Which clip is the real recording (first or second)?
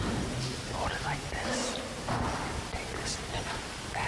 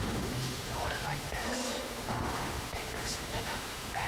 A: first